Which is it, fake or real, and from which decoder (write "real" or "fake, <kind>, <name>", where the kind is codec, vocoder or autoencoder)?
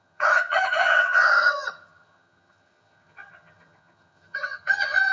fake, vocoder, HiFi-GAN